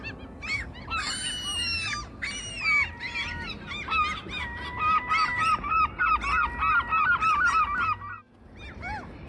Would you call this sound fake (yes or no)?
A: no